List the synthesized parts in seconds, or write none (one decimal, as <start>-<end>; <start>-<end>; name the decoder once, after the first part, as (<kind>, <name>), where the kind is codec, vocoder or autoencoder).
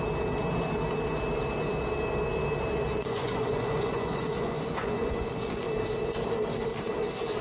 2.9-5.7 (vocoder, Vocos)